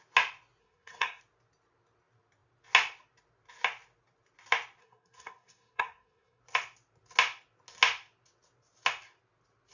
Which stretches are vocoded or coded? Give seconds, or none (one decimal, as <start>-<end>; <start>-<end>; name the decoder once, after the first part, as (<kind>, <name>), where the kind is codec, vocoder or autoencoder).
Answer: 0.6-1.2 (codec, SNAC); 4.8-6.4